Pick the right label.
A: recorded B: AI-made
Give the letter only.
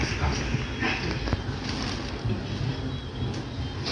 A